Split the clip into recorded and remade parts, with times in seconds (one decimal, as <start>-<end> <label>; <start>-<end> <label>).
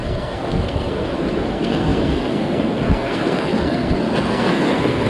0.0-5.1 remade